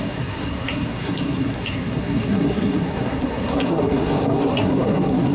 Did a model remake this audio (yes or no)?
yes